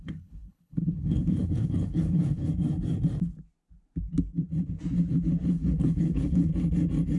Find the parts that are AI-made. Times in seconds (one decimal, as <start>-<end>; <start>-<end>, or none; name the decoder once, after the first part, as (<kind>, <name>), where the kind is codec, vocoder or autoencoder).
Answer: 0.0-2.5 (codec, HILCodec); 5.5-6.5